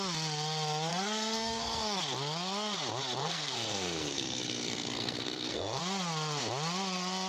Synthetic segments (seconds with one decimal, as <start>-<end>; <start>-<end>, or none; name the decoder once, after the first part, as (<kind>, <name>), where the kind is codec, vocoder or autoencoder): 0.9-2.0 (codec, SNAC); 3.2-5.8

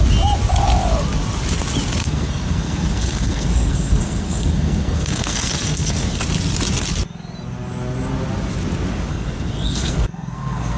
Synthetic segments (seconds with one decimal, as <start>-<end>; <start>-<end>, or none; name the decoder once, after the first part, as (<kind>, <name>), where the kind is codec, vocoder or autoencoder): 2.0-6.2 (codec, SNAC); 9.1-10.8

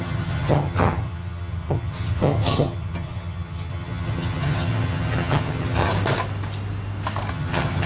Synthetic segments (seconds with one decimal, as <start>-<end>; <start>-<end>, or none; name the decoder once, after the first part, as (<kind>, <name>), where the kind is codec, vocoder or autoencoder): 0.0-5.9 (vocoder, HiFi-GAN); 7.3-7.9